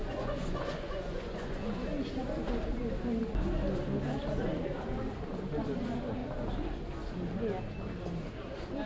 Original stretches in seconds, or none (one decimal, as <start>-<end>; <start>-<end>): 1.8-8.9